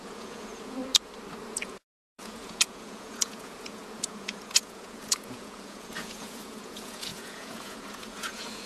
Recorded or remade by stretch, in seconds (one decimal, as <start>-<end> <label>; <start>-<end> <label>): 0.0-0.8 remade; 0.8-1.5 recorded; 1.5-8.7 remade